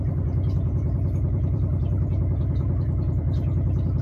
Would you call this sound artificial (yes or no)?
yes